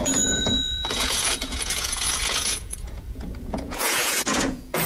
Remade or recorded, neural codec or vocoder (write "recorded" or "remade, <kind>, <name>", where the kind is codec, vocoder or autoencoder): remade, vocoder, Vocos